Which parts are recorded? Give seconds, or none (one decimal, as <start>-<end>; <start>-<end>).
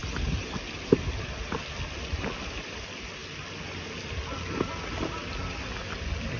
0.0-6.4